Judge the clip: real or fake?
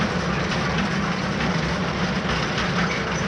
real